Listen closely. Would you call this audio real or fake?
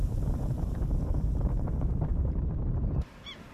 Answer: fake